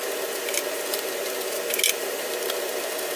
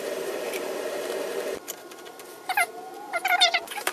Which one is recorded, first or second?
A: first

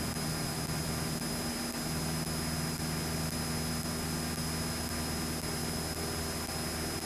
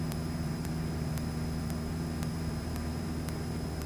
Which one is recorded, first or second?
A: first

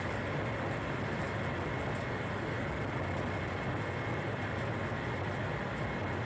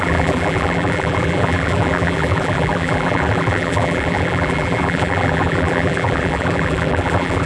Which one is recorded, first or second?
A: first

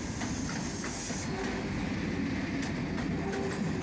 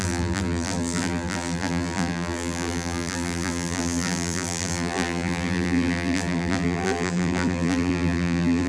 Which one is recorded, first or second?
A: first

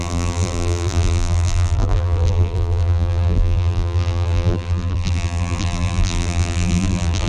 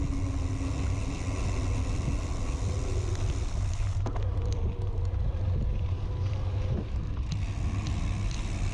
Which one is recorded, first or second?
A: second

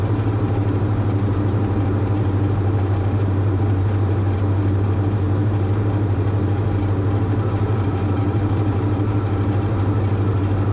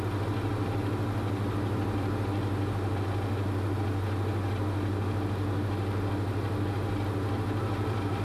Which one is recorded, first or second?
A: second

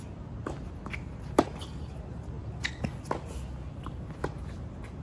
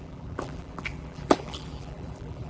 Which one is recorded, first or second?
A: first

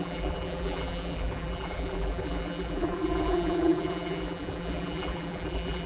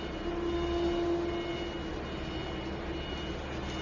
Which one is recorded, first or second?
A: second